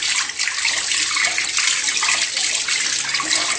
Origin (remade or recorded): recorded